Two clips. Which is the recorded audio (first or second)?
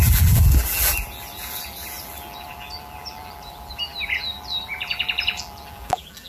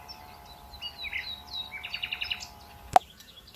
second